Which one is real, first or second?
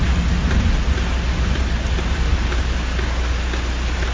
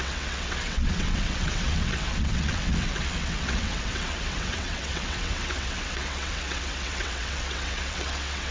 first